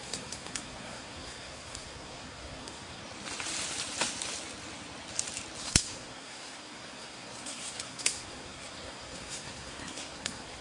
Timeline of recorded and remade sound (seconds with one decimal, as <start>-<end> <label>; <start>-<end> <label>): 0.0-3.0 remade; 3.0-5.6 recorded; 5.6-10.6 remade